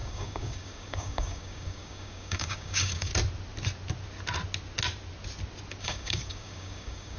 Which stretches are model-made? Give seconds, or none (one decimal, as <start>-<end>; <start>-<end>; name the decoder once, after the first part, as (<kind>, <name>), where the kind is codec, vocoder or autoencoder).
0.0-3.1 (codec, DAC); 5.8-7.2

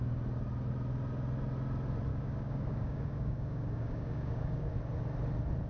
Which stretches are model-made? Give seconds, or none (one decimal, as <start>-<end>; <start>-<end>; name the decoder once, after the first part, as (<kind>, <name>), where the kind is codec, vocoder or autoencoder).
2.1-4.7 (codec, DAC)